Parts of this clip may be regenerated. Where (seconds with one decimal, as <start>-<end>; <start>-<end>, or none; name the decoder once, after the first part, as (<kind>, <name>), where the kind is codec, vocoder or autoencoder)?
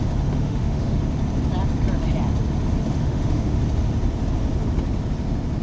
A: 0.4-1.0 (autoencoder, DAC-VAE); 3.0-3.6